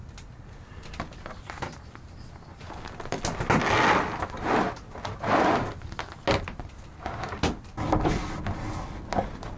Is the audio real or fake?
real